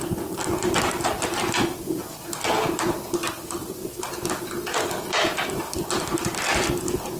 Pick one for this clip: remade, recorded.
recorded